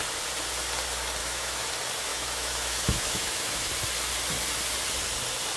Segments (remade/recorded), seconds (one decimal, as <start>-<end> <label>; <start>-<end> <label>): 0.0-1.2 recorded; 1.2-1.7 remade; 1.7-2.1 recorded; 2.1-3.7 remade; 3.7-5.6 recorded